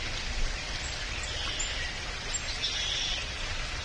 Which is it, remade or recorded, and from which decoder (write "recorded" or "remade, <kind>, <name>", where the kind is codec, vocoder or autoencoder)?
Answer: recorded